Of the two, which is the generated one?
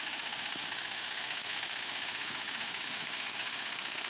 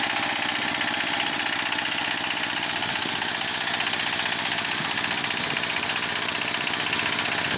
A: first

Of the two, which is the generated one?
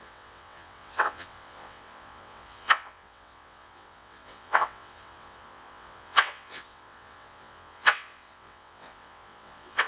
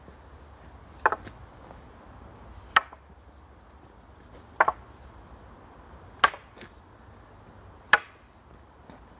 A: first